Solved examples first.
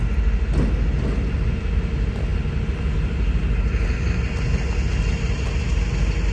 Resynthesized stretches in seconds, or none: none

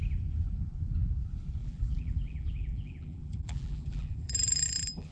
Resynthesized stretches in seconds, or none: 1.6-5.1 (vocoder, BigVGAN v2)

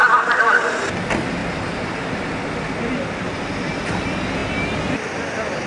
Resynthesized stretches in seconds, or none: 1.4-2.1 (vocoder, BigVGAN v2)

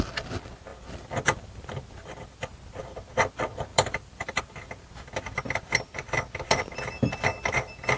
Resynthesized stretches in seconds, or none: 0.7-2.8 (vocoder, BigVGAN v2); 3.7-5.1